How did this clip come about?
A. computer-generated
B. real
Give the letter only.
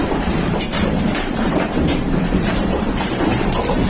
A